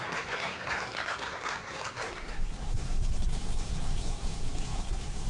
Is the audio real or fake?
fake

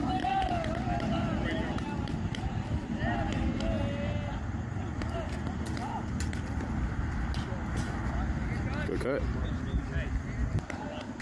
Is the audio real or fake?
real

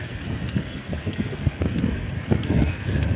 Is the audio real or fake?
fake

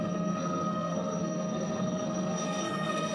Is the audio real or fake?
fake